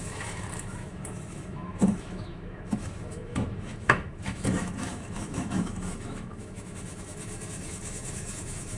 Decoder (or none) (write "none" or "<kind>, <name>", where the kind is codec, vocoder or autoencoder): autoencoder, DAC-VAE